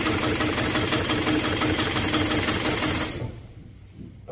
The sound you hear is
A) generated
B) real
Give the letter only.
B